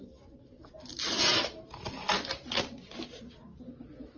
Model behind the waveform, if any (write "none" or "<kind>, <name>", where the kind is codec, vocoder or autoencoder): none